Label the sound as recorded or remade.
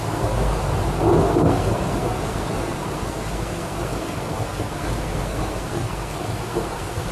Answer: remade